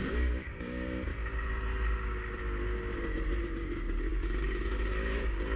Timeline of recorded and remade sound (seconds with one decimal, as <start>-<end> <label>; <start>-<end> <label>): 0.0-1.1 remade; 1.1-3.4 recorded; 3.4-5.6 remade